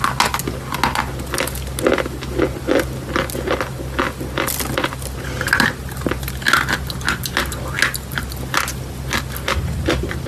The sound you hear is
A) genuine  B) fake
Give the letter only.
A